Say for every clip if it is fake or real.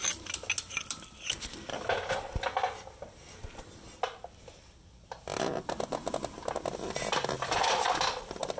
real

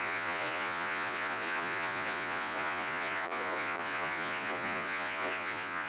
fake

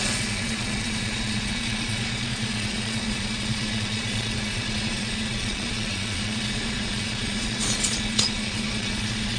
fake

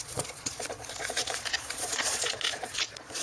fake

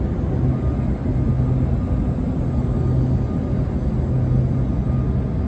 real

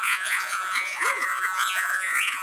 fake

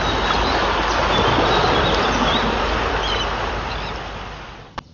real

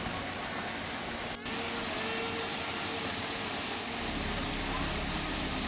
real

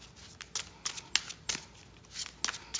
real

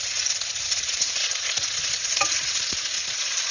fake